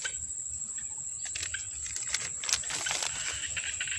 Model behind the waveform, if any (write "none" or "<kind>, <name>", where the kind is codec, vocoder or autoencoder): none